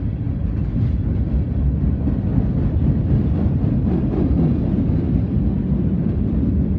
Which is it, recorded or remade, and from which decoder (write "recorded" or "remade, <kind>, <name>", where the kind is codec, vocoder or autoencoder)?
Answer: recorded